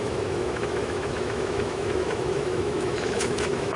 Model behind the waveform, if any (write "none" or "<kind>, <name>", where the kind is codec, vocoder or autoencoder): autoencoder, DAC-VAE